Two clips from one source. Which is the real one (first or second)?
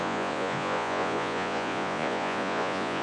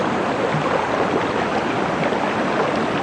second